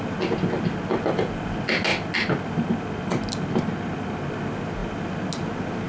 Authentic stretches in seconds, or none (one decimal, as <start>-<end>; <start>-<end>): 0.0-5.9